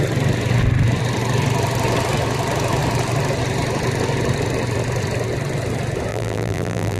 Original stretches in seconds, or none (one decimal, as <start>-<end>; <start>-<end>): 0.0-6.1